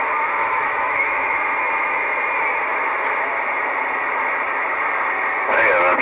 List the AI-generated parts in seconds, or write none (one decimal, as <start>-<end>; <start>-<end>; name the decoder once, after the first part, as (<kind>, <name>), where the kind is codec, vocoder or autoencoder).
0.4-1.4 (autoencoder, DAC-VAE)